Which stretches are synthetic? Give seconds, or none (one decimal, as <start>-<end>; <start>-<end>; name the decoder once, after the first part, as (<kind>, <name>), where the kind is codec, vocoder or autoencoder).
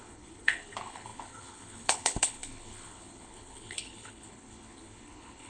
0.0-5.5 (codec, HILCodec)